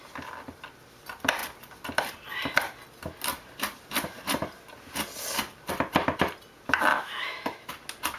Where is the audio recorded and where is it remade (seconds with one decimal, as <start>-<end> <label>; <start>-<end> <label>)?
0.0-6.9 recorded; 6.9-7.7 remade; 7.7-8.2 recorded